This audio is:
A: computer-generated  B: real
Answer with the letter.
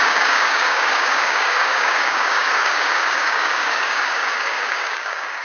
A